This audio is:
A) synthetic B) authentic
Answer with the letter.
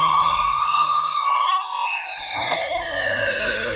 A